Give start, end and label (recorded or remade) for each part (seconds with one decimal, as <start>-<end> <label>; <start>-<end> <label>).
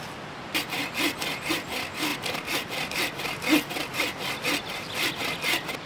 0.0-2.1 recorded; 2.1-5.9 remade